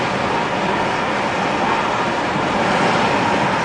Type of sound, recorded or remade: recorded